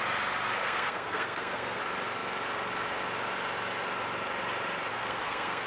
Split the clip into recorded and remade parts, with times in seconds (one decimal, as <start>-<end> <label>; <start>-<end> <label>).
0.0-0.6 recorded; 0.6-1.8 remade; 1.8-4.9 recorded; 4.9-5.7 remade